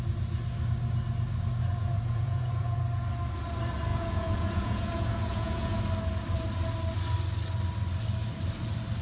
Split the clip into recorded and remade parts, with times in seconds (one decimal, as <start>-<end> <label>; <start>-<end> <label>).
0.0-1.7 recorded; 1.7-2.8 remade; 2.8-3.9 recorded; 3.9-5.8 remade; 5.8-9.0 recorded